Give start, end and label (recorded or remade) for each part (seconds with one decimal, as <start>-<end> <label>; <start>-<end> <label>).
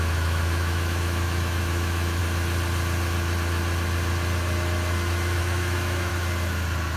0.0-2.2 remade; 2.2-5.4 recorded; 5.4-6.1 remade; 6.1-7.0 recorded